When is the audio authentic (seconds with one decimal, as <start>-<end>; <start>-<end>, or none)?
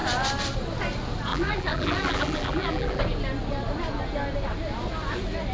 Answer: 0.0-1.3; 3.0-5.5